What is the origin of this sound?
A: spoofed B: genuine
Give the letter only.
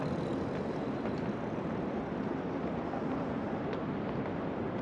B